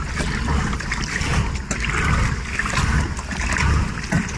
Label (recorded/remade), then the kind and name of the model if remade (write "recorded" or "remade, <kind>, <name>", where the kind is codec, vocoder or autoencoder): recorded